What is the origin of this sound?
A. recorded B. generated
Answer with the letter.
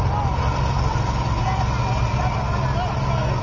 A